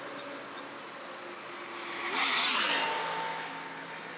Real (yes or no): yes